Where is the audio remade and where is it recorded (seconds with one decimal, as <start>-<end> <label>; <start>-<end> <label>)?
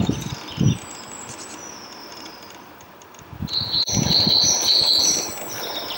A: 0.0-2.0 recorded; 2.0-5.3 remade; 5.3-6.0 recorded